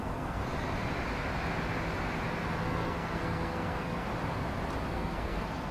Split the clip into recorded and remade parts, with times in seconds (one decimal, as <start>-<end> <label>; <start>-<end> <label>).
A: 0.0-0.4 remade; 0.4-2.6 recorded; 2.6-4.1 remade; 4.1-4.9 recorded; 4.9-5.7 remade

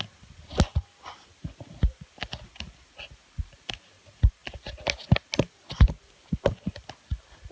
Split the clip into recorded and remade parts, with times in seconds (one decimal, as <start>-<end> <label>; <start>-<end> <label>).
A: 0.0-7.5 recorded